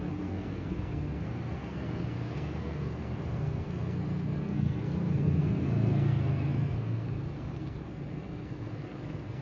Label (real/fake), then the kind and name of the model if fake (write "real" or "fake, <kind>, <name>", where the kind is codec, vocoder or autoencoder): fake, codec, SNAC